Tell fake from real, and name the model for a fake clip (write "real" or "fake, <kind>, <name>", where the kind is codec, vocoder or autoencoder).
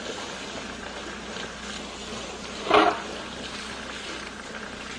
real